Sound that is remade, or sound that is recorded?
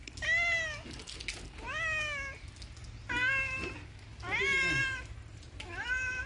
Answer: recorded